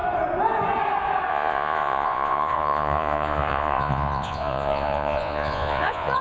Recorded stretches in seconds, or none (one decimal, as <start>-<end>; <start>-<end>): 0.0-1.3